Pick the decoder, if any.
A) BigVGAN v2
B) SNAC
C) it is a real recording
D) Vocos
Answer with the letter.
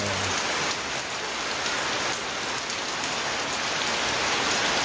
C